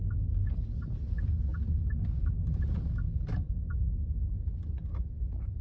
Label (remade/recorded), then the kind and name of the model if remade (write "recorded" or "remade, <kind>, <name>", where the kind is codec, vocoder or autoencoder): recorded